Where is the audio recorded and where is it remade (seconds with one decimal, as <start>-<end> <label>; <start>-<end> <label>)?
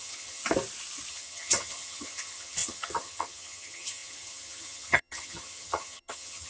0.0-0.4 remade; 0.4-1.1 recorded; 1.1-6.5 remade